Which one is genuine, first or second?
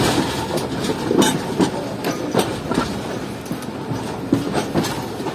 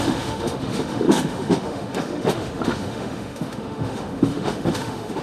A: first